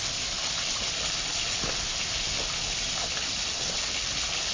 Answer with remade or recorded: recorded